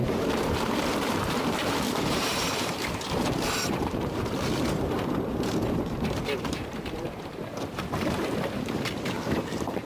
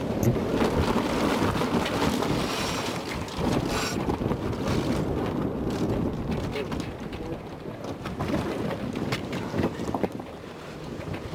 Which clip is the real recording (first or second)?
second